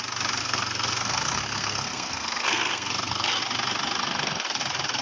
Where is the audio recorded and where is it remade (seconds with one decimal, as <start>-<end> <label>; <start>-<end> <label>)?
0.0-0.4 recorded; 0.4-3.4 remade; 3.4-4.0 recorded; 4.0-4.6 remade; 4.6-5.0 recorded